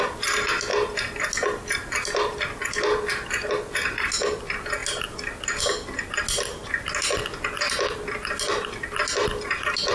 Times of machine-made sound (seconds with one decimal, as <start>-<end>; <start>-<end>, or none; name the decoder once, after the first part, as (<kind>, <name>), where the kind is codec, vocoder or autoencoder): none